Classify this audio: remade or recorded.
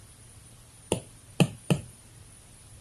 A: recorded